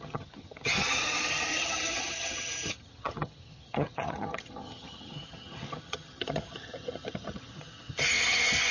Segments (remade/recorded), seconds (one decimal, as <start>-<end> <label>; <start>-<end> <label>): 0.0-8.7 remade